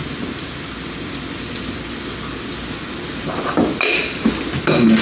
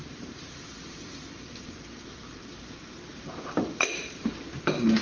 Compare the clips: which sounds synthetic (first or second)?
second